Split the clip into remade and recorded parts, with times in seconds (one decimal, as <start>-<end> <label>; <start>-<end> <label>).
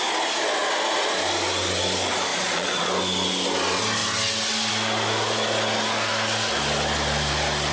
0.0-2.3 recorded; 2.3-2.9 remade; 2.9-7.7 recorded